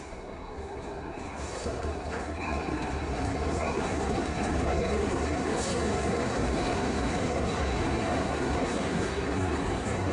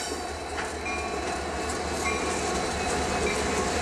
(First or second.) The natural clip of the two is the second